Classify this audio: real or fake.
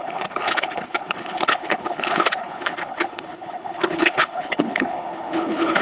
fake